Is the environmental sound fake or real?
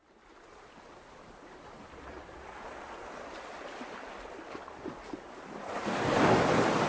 real